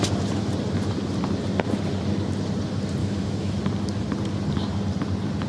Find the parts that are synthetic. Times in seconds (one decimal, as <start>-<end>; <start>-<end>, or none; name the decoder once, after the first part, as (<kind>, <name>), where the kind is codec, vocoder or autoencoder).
3.0-3.6 (autoencoder, DAC-VAE)